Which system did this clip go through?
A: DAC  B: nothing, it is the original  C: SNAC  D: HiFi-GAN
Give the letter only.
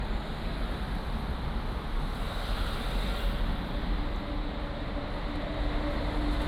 B